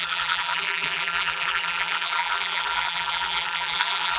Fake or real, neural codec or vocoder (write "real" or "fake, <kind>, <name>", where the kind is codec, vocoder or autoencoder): fake, vocoder, BigVGAN v2